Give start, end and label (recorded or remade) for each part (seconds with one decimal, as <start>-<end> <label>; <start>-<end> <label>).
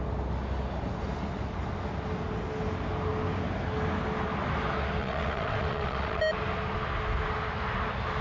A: 0.0-5.0 recorded; 5.0-6.2 remade; 6.2-8.2 recorded